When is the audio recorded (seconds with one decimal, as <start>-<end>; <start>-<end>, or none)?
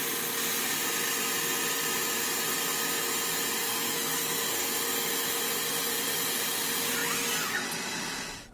0.0-3.6; 4.8-8.5